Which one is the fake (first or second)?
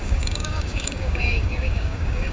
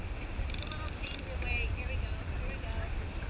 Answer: first